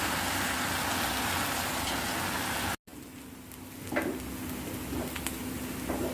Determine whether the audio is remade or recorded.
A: recorded